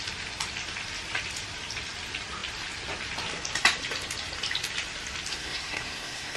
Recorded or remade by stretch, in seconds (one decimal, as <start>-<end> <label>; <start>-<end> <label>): 0.0-5.3 recorded; 5.3-6.4 remade